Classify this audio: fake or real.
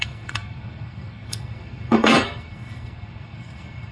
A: fake